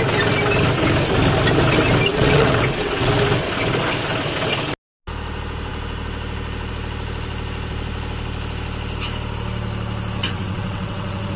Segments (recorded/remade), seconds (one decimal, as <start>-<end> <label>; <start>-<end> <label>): 0.0-2.1 recorded; 2.1-3.1 remade; 3.1-10.2 recorded; 10.2-11.4 remade

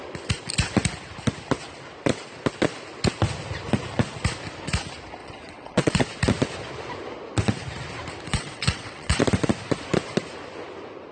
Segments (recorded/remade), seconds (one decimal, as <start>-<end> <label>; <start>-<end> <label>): 0.0-5.2 recorded; 5.2-6.0 remade; 6.0-8.3 recorded; 8.3-9.2 remade; 9.2-11.1 recorded

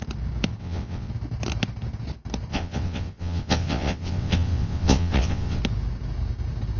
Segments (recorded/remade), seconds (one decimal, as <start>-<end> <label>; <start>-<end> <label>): 0.0-0.6 recorded; 0.6-1.1 remade; 1.1-2.5 recorded; 2.5-5.6 remade; 5.6-6.8 recorded

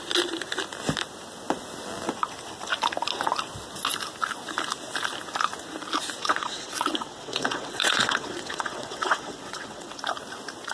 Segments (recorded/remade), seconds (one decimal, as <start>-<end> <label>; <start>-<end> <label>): 0.0-6.2 recorded; 6.2-10.0 remade; 10.0-10.7 recorded

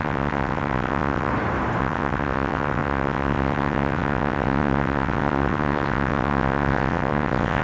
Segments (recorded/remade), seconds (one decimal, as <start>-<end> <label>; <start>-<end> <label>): 0.0-1.3 remade; 1.3-1.8 recorded; 1.8-7.6 remade

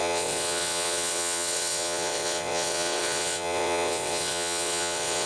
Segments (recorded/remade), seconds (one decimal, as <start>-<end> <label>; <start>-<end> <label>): 0.0-5.3 remade

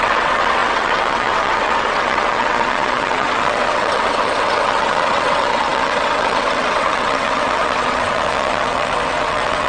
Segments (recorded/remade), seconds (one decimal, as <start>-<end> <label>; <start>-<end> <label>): 0.0-9.7 remade